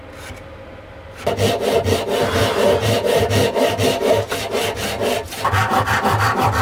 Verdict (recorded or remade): recorded